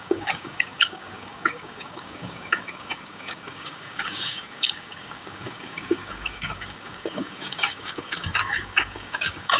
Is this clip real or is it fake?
fake